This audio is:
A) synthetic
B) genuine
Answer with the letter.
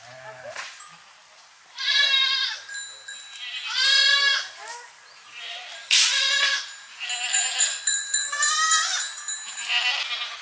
B